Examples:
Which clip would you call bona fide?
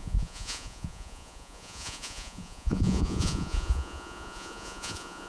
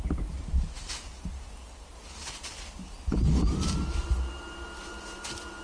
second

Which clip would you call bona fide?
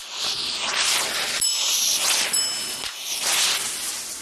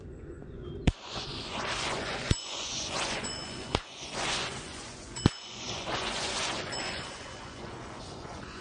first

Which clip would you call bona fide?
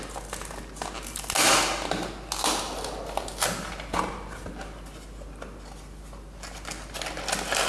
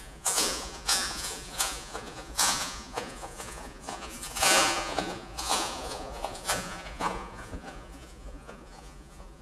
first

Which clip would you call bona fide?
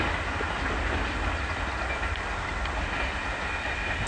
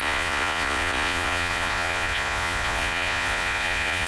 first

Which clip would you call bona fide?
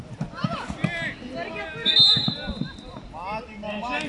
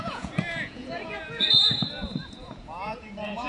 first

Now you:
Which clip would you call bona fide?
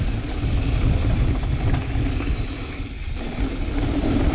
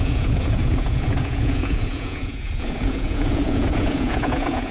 first